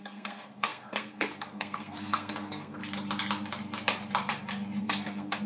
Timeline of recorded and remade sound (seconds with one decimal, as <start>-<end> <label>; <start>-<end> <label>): 0.0-2.8 remade; 2.8-4.8 recorded; 4.8-5.5 remade